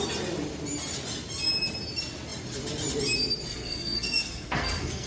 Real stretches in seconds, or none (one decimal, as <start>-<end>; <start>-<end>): 0.0-3.5